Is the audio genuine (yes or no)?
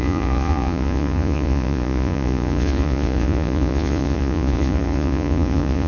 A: no